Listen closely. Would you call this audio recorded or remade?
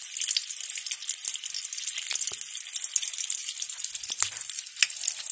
recorded